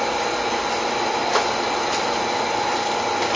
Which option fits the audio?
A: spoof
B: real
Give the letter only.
B